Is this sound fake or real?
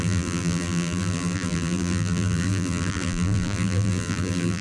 fake